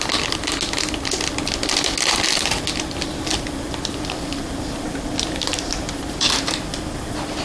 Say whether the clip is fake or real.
real